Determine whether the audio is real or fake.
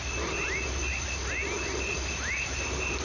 real